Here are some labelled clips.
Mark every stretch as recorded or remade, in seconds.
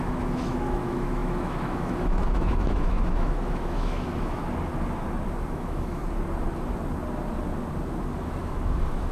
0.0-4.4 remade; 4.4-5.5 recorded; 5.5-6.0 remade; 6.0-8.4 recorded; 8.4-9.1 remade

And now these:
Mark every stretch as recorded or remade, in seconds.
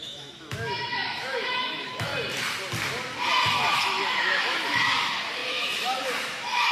0.0-2.1 remade; 2.1-3.5 recorded; 3.5-6.7 remade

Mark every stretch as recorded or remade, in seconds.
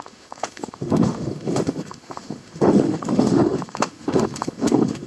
0.0-5.1 remade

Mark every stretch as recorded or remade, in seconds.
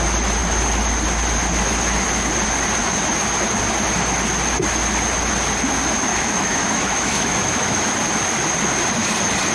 0.0-6.1 recorded; 6.1-7.9 remade; 7.9-9.5 recorded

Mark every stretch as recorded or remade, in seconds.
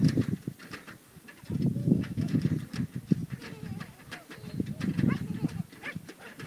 0.0-1.8 recorded; 1.8-2.4 remade; 2.4-6.5 recorded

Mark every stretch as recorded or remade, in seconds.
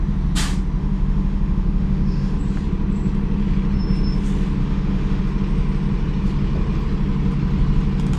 0.0-0.8 recorded; 0.8-2.4 remade; 2.4-4.6 recorded; 4.6-5.2 remade; 5.2-8.2 recorded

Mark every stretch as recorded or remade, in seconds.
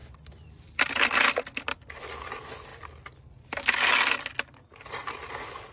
0.0-5.7 recorded